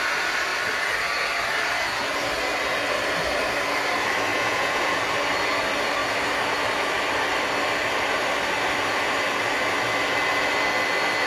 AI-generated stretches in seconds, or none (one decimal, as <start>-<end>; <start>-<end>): 4.3-5.0